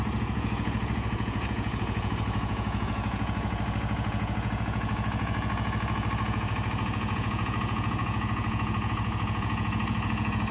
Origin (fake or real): fake